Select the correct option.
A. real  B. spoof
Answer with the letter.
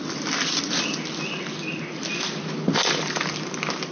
A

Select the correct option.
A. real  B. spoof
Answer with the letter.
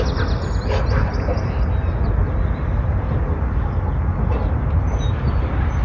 A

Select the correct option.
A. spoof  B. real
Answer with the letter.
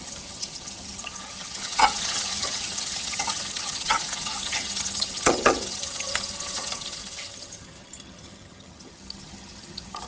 A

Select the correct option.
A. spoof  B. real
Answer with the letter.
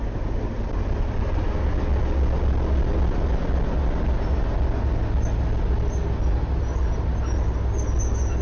B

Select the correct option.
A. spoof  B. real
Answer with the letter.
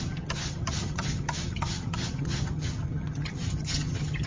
A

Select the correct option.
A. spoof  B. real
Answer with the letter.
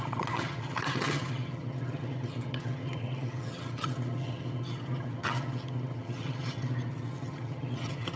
A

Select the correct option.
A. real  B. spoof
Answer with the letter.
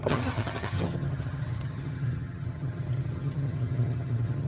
B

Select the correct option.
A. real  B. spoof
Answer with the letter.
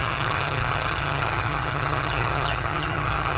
B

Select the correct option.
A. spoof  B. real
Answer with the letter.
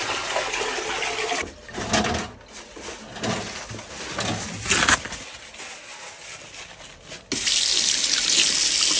B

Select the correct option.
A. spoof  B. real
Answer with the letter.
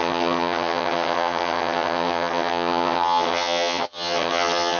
A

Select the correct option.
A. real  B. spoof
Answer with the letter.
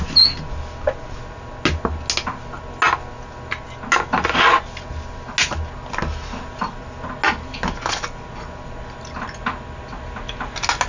A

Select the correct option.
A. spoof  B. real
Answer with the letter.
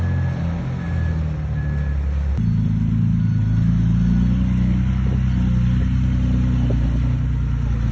B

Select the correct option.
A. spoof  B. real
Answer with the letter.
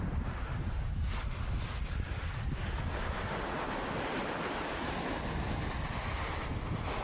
B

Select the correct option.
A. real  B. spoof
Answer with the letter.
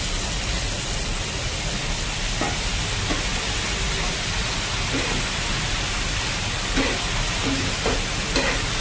A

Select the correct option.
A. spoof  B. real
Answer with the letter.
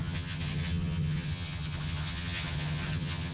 A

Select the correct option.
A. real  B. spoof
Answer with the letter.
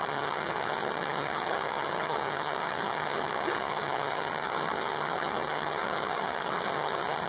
B